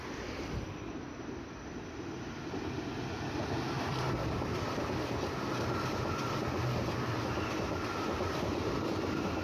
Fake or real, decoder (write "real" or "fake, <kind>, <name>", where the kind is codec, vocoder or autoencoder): real